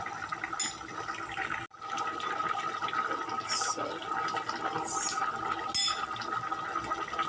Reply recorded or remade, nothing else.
recorded